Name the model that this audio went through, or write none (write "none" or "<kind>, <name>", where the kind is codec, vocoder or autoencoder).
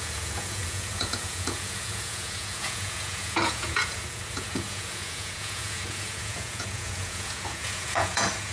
vocoder, Vocos